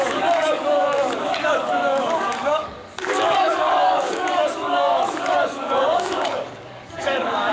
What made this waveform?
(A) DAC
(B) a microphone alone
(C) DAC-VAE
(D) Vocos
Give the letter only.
A